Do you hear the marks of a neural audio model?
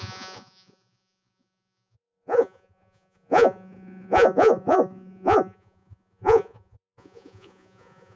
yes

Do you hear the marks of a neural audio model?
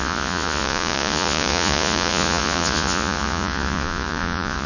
yes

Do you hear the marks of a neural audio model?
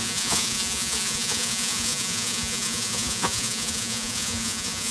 yes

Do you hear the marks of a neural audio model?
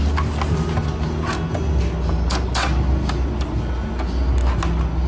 no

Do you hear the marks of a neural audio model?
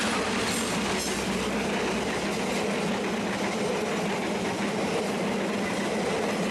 no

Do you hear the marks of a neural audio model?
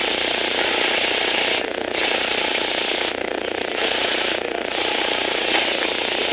no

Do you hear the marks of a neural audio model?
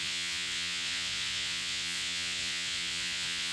yes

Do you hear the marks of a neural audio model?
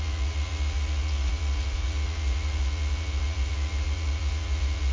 yes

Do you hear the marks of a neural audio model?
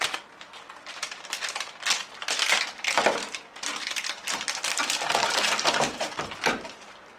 no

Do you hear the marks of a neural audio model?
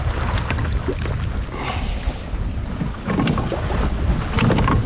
no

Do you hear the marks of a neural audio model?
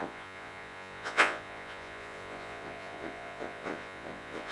yes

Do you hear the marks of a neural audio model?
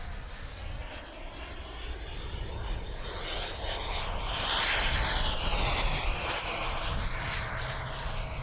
no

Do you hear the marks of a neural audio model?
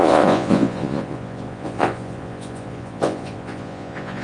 yes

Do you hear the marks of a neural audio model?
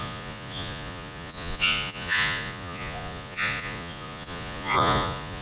yes